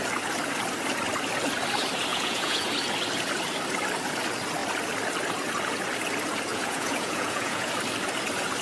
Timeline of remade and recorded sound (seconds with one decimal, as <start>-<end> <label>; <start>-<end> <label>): 0.0-2.1 recorded; 2.1-2.7 remade; 2.7-6.5 recorded; 6.5-7.7 remade; 7.7-8.6 recorded